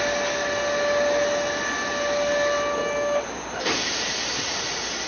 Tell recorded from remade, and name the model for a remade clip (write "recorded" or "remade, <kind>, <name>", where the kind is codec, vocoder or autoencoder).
recorded